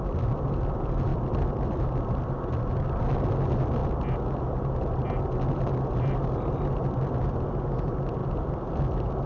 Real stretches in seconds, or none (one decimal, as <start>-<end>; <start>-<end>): 0.0-1.1; 3.0-8.2; 8.8-9.3

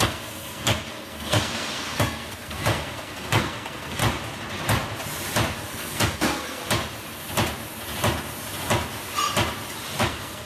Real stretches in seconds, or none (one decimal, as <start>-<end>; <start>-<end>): 4.0-5.7; 6.6-10.0